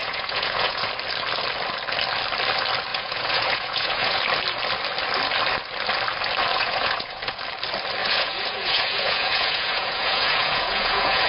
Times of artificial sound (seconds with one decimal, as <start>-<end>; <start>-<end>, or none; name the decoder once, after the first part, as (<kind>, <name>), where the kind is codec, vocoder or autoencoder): 0.0-0.9 (vocoder, Vocos); 2.9-4.2; 6.5-7.4; 8.0-11.3